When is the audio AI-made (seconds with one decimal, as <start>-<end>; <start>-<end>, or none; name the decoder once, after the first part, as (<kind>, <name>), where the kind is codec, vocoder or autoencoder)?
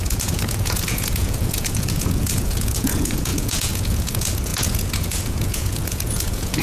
0.0-6.6 (vocoder, Vocos)